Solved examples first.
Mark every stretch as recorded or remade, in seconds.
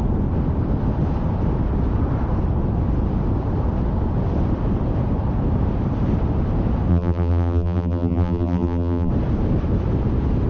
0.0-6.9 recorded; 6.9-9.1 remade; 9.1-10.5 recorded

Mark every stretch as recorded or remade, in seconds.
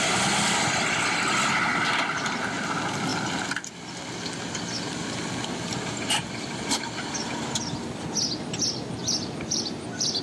0.0-9.0 recorded; 9.0-10.2 remade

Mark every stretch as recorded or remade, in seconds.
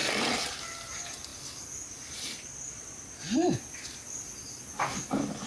0.0-0.6 remade; 0.6-1.3 recorded; 1.3-4.6 remade; 4.6-5.5 recorded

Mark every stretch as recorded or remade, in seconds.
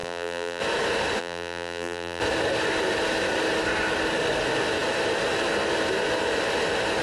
0.0-0.6 remade; 0.6-1.2 recorded; 1.2-2.2 remade; 2.2-7.0 recorded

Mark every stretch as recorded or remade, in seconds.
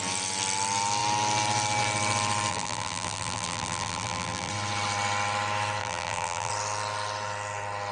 0.0-2.5 recorded; 2.5-4.5 remade; 4.5-5.8 recorded; 5.8-6.5 remade; 6.5-7.9 recorded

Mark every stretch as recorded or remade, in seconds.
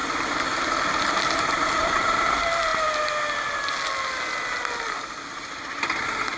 0.0-6.4 recorded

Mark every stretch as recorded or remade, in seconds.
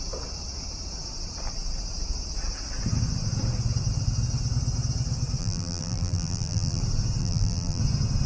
0.0-5.4 recorded; 5.4-6.8 remade; 6.8-7.2 recorded; 7.2-7.8 remade; 7.8-8.3 recorded